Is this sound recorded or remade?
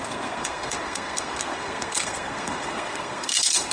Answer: remade